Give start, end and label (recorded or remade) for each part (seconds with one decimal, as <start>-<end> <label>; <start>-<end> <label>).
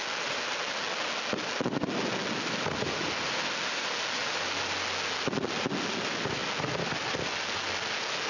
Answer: 0.0-8.3 recorded